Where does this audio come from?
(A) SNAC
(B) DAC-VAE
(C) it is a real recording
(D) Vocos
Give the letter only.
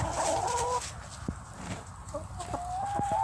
C